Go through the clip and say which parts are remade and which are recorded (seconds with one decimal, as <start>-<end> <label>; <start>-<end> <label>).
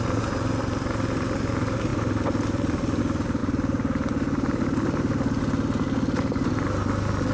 0.0-3.4 recorded; 3.4-4.6 remade; 4.6-7.3 recorded